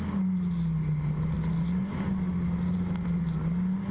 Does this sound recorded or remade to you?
recorded